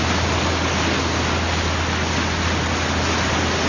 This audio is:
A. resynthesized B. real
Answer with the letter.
B